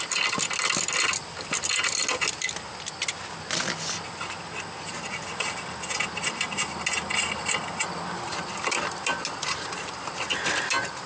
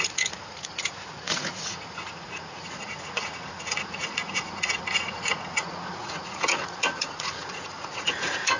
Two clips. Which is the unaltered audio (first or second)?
first